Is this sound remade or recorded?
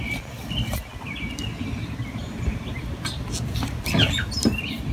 remade